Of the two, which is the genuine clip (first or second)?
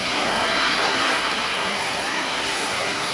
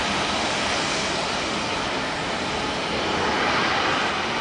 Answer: second